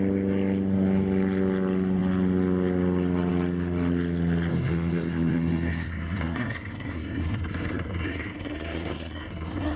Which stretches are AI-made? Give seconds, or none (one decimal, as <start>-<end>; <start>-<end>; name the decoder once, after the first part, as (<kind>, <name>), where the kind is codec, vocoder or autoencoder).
4.5-9.8 (codec, SNAC)